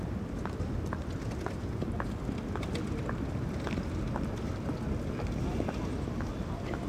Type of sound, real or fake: real